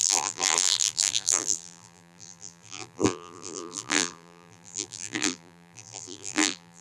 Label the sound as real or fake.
fake